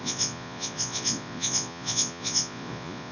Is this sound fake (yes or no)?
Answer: yes